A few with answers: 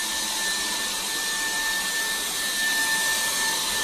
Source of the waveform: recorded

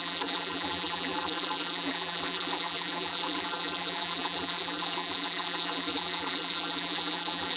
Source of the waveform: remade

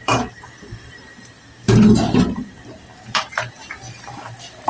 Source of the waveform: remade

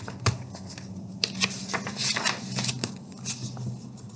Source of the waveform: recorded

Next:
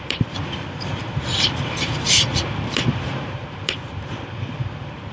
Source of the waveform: remade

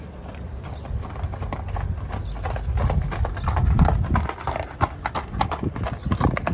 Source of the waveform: recorded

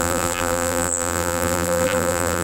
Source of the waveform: remade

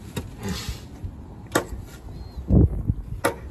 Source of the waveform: recorded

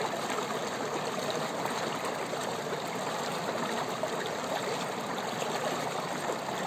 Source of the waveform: recorded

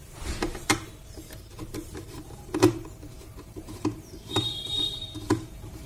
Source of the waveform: remade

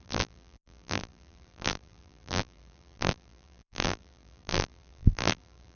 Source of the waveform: remade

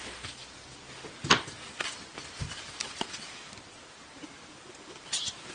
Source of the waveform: remade